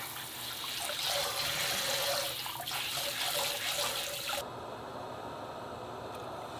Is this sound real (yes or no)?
yes